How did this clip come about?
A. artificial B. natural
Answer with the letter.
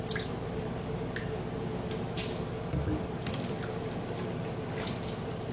B